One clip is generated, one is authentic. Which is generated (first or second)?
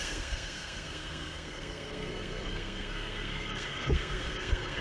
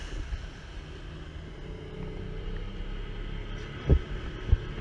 first